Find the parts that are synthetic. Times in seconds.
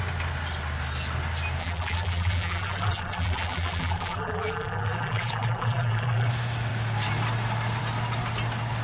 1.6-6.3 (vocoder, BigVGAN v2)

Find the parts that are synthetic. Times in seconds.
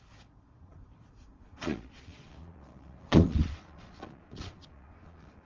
0.0-5.5 (vocoder, Vocos)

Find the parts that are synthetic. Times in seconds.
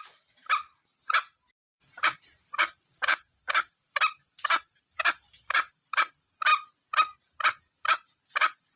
0.0-0.8 (vocoder, BigVGAN v2); 1.5-6.5; 7.7-8.8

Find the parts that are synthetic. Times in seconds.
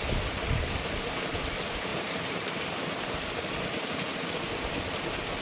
1.9-2.6 (vocoder, BigVGAN v2)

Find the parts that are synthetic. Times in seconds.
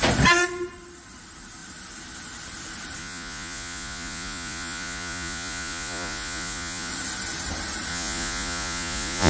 3.0-6.9 (vocoder, Vocos); 7.9-9.3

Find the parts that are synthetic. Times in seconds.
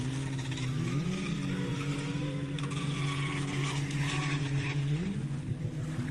1.7-5.4 (vocoder, Vocos)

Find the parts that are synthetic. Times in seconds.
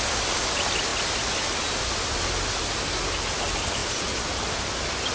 none